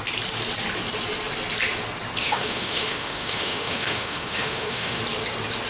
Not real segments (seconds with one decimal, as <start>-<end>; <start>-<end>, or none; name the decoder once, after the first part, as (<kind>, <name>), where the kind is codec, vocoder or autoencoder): 2.2-5.0 (autoencoder, DAC-VAE)